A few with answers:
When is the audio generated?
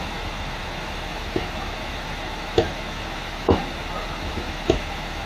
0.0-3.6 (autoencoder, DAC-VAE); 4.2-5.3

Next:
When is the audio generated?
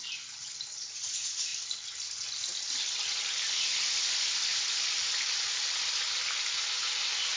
none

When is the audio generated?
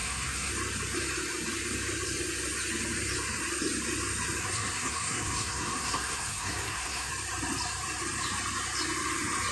0.0-0.5 (codec, SNAC); 4.4-7.1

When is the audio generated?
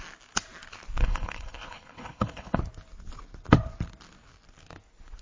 1.0-2.6 (codec, HILCodec)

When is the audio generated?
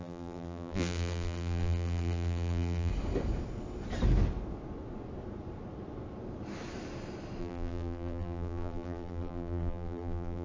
0.0-2.9 (vocoder, BigVGAN v2); 7.4-10.4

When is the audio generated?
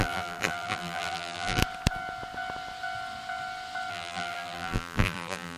0.0-1.6 (vocoder, BigVGAN v2); 3.9-5.6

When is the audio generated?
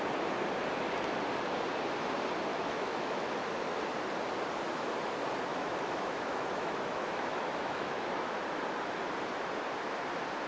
2.5-3.3 (autoencoder, DAC-VAE); 5.5-8.3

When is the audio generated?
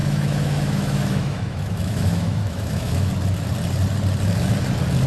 0.0-3.1 (autoencoder, DAC-VAE)